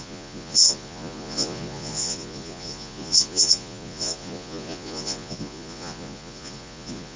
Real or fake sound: fake